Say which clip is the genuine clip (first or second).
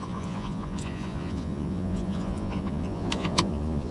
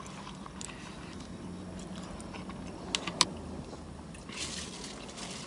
second